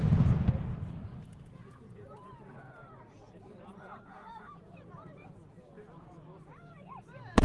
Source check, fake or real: fake